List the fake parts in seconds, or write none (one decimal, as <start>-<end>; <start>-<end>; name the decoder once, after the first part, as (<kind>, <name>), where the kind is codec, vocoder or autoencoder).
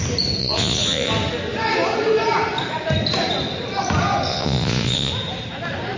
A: 0.4-1.1 (vocoder, Vocos); 4.3-5.1